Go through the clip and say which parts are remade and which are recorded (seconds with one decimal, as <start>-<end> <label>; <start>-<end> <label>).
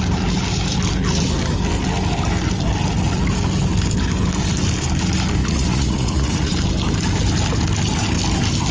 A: 0.0-5.4 recorded; 5.4-6.5 remade; 6.5-8.7 recorded